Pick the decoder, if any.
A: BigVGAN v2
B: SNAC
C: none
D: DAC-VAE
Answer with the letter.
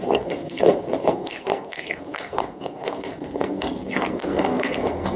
B